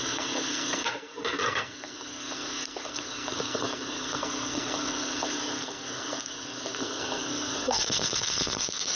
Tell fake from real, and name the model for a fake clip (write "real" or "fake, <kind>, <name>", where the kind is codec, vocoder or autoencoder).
fake, codec, SNAC